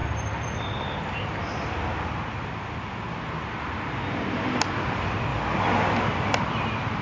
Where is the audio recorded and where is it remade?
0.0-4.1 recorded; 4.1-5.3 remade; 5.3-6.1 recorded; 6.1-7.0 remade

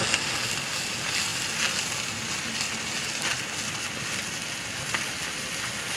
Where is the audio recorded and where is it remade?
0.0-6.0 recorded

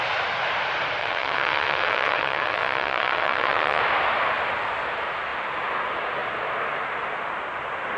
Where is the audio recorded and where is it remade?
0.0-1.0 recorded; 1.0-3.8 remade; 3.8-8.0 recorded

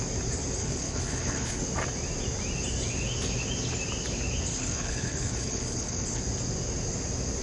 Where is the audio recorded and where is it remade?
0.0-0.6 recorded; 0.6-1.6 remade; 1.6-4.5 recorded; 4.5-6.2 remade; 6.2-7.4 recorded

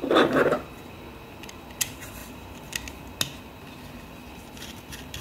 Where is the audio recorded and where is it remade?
0.0-2.2 recorded; 2.2-2.7 remade; 2.7-5.2 recorded

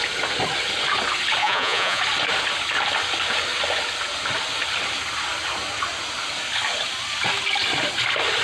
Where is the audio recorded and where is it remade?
0.0-1.4 recorded; 1.4-2.0 remade; 2.0-8.4 recorded

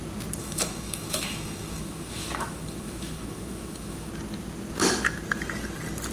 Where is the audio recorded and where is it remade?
0.0-0.4 recorded; 0.4-4.1 remade; 4.1-6.1 recorded

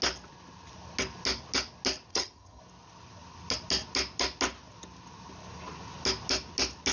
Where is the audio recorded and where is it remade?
0.0-2.1 recorded; 2.1-2.6 remade; 2.6-6.9 recorded